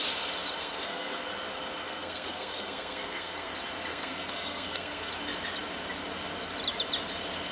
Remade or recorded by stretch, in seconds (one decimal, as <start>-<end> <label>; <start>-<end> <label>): 0.0-0.6 recorded; 0.6-1.3 remade; 1.3-1.8 recorded; 1.8-3.5 remade; 3.5-3.9 recorded; 3.9-5.1 remade; 5.1-7.5 recorded